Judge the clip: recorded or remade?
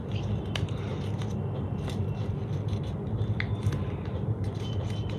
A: recorded